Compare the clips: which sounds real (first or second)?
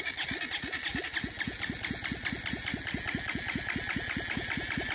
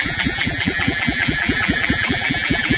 first